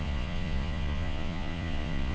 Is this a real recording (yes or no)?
no